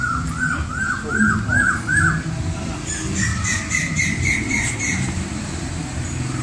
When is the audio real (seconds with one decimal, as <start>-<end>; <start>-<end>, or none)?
0.0-3.3; 5.8-6.4